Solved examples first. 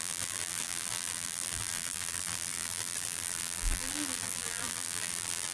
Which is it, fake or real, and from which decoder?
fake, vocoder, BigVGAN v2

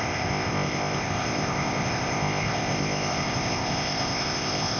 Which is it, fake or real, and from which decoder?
fake, codec, ZipCodec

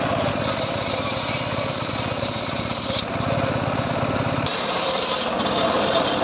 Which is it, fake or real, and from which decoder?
fake, vocoder, BigVGAN v2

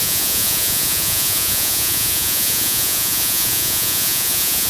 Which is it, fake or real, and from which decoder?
fake, vocoder, Vocos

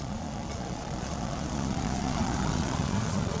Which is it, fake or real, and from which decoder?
fake, vocoder, Vocos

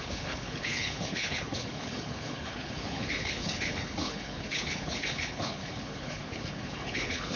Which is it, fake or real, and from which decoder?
fake, codec, HILCodec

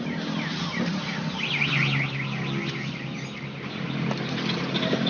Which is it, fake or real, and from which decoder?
real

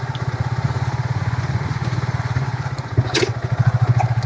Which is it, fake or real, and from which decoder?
fake, vocoder, Vocos